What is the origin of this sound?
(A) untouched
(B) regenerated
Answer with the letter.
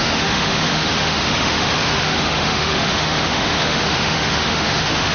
B